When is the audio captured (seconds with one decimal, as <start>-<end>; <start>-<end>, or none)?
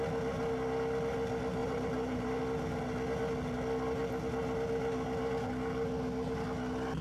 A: 0.0-1.6; 2.4-7.0